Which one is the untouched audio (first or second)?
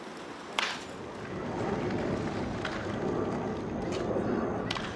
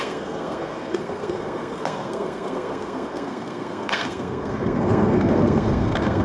first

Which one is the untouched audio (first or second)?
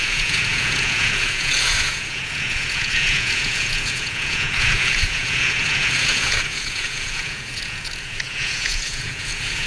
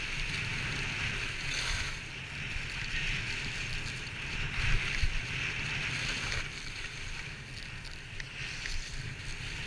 second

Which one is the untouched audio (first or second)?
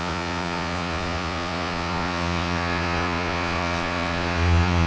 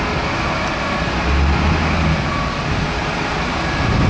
second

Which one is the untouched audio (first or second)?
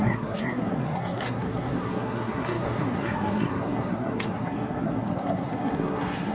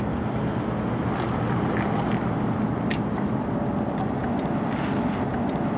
second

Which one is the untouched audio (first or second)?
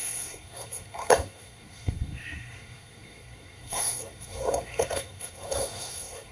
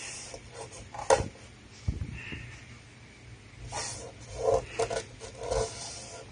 second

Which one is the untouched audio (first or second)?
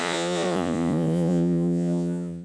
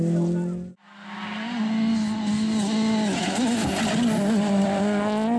second